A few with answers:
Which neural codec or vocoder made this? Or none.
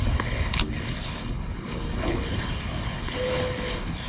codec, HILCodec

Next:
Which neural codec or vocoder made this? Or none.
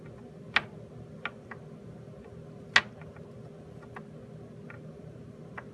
none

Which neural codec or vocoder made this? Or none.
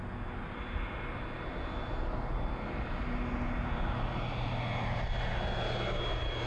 none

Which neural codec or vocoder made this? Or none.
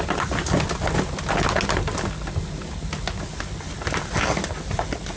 none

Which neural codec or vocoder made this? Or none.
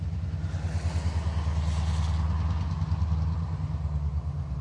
none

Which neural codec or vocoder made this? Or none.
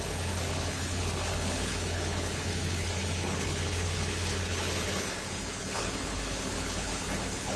codec, HILCodec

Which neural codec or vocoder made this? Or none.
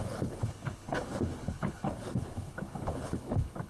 codec, HILCodec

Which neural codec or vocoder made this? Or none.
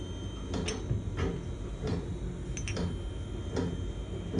none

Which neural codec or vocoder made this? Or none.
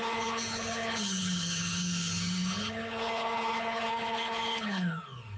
codec, HILCodec